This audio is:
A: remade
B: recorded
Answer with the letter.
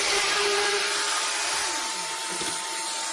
B